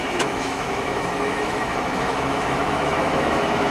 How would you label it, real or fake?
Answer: fake